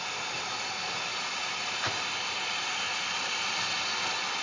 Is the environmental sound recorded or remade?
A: recorded